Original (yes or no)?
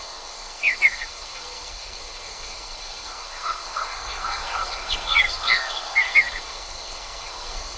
no